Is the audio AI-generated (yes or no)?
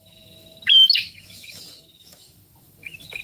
yes